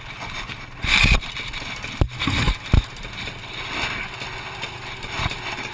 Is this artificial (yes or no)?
no